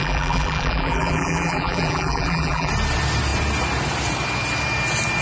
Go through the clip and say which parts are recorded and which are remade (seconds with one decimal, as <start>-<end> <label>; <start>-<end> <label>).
0.0-2.7 remade; 2.7-5.2 recorded